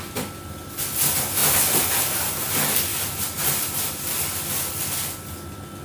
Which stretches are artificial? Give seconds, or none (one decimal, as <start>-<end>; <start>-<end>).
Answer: 1.4-2.4